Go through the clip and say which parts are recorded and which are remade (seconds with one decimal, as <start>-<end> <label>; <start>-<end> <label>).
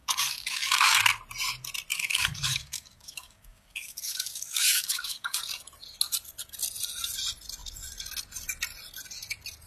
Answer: 0.0-1.0 remade; 1.0-1.9 recorded; 1.9-5.4 remade; 5.4-9.7 recorded